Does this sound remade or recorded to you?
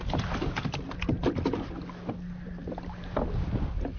recorded